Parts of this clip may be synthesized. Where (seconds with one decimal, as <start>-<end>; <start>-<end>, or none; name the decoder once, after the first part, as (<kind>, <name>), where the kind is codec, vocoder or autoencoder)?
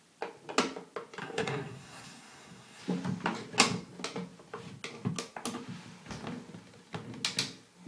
1.2-2.8 (codec, SNAC)